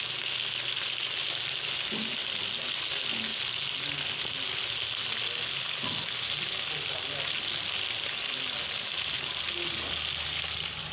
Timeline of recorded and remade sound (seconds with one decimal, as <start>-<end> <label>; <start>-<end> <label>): 0.0-10.9 recorded